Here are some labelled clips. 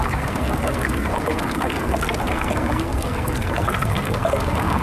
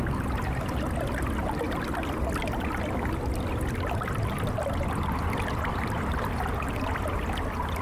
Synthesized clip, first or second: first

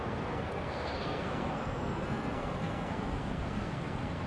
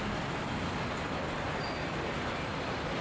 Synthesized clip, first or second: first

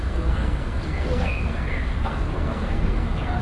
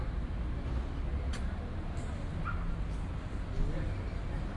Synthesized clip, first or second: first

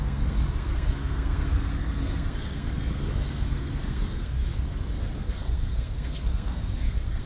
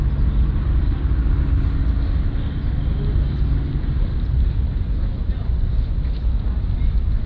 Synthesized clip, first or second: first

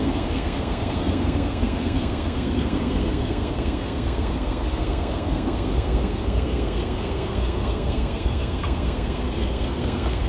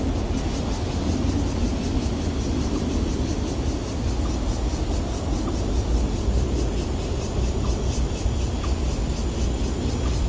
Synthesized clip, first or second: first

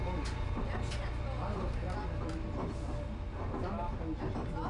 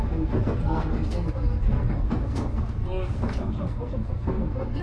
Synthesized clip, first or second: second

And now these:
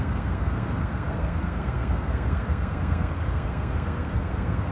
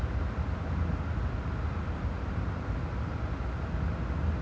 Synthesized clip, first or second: first